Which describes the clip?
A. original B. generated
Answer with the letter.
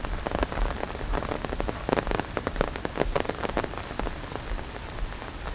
A